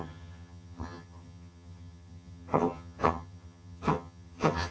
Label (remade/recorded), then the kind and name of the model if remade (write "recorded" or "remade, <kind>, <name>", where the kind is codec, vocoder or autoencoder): remade, vocoder, HiFi-GAN